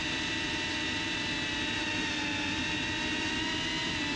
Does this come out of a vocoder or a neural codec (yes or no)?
no